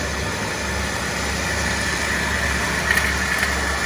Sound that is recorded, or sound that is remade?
recorded